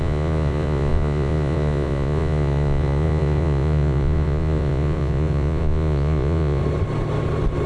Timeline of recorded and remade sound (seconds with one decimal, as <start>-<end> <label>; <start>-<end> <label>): 0.0-6.6 remade; 6.6-7.7 recorded